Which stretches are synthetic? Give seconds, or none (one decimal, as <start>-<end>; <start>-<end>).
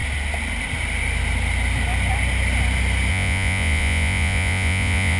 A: 3.1-5.2